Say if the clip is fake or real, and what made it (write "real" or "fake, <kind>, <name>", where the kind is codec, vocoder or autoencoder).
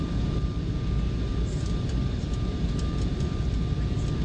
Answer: real